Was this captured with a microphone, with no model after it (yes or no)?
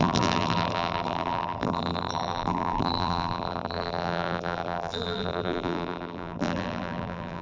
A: no